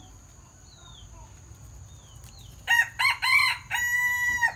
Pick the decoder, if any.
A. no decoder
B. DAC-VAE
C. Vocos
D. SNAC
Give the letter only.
A